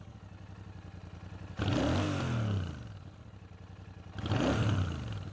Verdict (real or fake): real